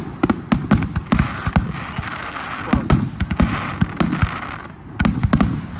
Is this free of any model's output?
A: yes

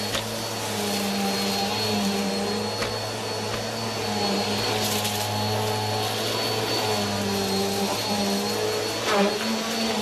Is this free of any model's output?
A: yes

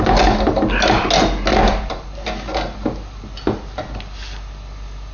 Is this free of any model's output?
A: yes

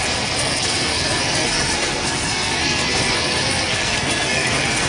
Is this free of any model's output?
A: no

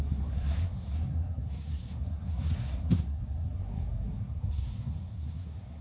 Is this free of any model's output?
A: no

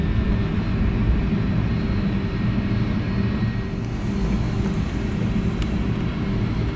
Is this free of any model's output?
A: yes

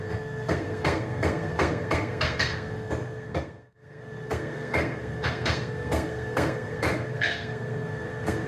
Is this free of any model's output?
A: no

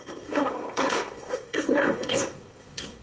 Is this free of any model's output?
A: no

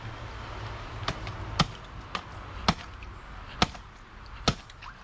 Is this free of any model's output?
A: yes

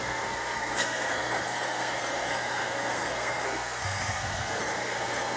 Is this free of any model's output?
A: no